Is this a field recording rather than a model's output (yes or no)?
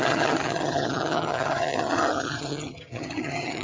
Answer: no